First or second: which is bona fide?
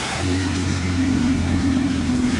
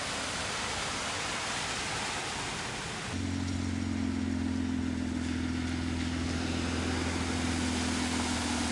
second